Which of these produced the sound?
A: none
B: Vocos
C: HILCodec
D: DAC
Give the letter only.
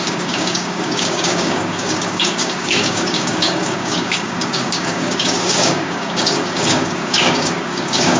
D